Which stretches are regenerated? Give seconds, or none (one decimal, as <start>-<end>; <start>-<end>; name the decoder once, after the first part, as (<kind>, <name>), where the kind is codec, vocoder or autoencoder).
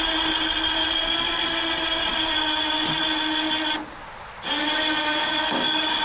5.0-6.0 (codec, DAC)